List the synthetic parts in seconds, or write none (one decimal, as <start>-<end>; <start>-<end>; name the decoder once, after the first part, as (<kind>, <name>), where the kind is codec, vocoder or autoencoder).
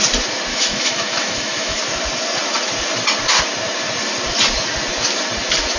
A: 0.5-1.8 (autoencoder, DAC-VAE)